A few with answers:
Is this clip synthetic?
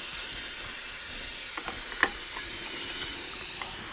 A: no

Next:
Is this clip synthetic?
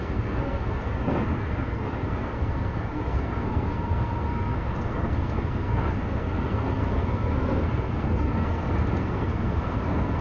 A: yes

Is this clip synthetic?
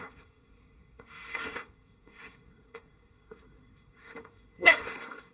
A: yes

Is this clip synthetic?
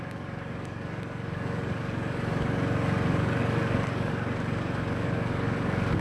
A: yes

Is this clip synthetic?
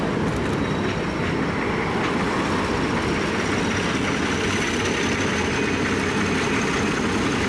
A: no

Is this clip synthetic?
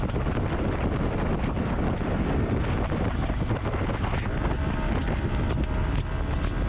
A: no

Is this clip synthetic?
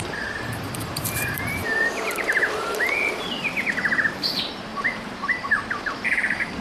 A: yes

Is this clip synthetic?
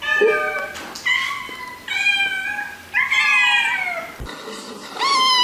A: no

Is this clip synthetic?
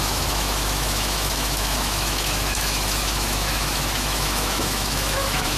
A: yes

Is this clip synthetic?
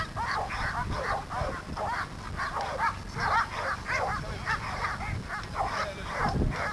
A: no